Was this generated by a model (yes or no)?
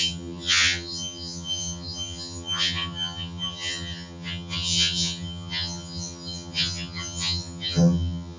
yes